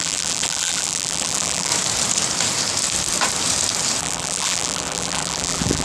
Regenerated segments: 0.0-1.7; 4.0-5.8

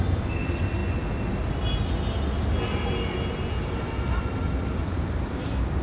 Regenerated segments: none

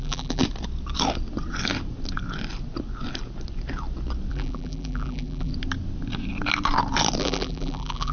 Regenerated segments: 0.0-0.4; 4.3-5.5; 7.2-8.1

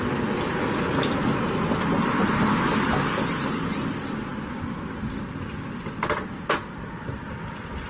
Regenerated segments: none